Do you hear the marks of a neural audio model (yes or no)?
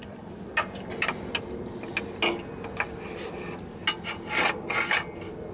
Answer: no